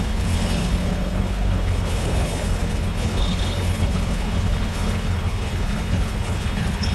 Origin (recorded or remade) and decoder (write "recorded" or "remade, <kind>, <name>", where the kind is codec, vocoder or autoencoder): remade, codec, HILCodec